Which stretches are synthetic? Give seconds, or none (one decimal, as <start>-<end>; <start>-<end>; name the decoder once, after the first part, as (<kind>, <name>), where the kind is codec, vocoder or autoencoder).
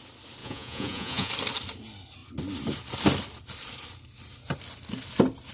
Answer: 0.4-1.3 (vocoder, Vocos)